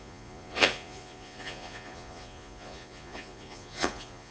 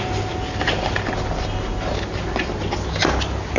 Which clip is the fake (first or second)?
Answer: first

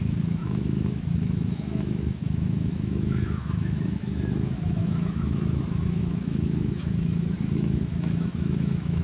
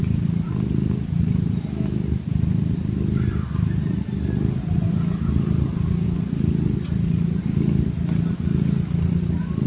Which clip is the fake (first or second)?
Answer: first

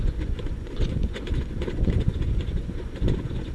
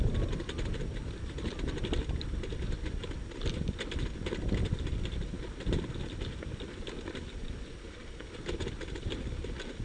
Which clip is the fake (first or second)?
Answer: first